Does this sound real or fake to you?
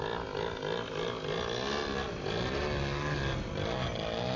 real